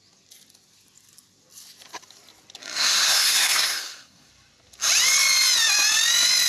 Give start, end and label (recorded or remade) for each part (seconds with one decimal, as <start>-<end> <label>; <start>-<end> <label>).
0.0-2.6 recorded; 2.6-4.3 remade; 4.3-6.5 recorded